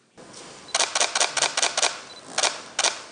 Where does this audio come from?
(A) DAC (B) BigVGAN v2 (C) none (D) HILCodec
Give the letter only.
C